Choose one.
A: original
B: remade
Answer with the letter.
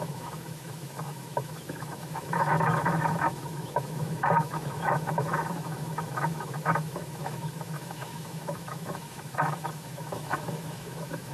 B